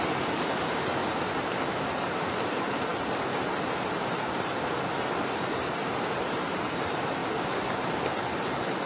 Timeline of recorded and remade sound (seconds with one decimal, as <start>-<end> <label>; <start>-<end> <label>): 0.0-1.0 remade; 1.0-1.6 recorded; 1.6-2.9 remade; 2.9-5.4 recorded; 5.4-7.2 remade; 7.2-8.9 recorded